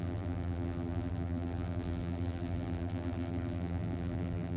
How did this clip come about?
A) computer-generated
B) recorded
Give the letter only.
A